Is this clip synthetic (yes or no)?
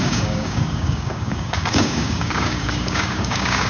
yes